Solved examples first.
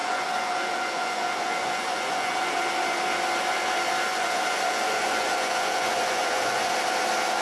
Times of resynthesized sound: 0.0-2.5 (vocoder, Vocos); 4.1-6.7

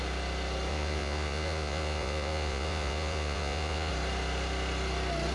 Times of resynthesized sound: 0.7-3.9 (vocoder, Vocos)

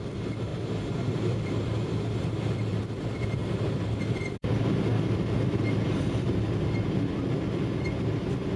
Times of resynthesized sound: 0.5-2.8 (vocoder, BigVGAN v2); 3.4-4.5; 4.9-6.2

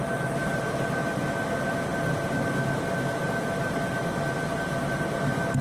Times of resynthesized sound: none

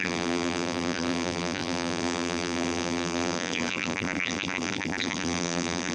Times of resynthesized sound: 0.0-5.9 (vocoder, BigVGAN v2)

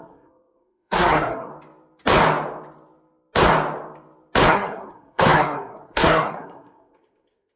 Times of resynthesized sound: 0.0-1.5 (codec, SNAC); 4.5-7.6

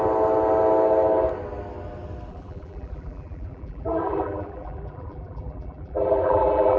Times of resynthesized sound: 2.3-6.8 (vocoder, BigVGAN v2)

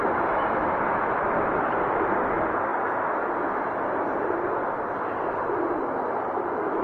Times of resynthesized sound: 0.0-2.7 (vocoder, BigVGAN v2); 4.0-6.8